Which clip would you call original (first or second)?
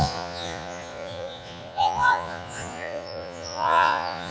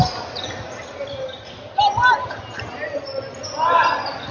second